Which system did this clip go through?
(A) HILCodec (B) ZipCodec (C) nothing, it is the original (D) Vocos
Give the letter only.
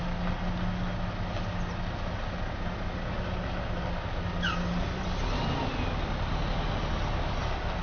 C